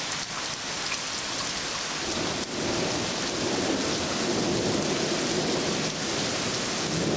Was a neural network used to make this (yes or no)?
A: no